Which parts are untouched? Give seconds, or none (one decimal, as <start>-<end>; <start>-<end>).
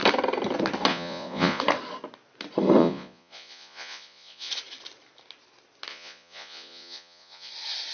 0.0-0.9; 1.6-2.8; 4.5-5.9; 7.5-7.9